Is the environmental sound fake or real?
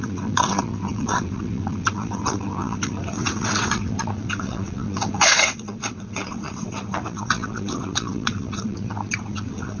fake